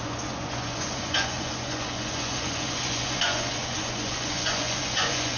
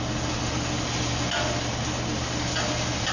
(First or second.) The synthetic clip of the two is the first